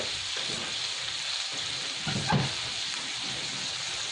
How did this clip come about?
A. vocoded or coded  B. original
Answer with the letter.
B